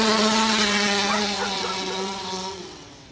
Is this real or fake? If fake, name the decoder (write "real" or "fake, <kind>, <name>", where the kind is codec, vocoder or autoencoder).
fake, vocoder, WaveNeXt